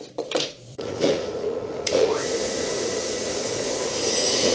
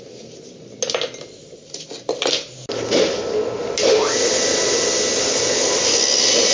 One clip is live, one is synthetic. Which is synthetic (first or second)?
first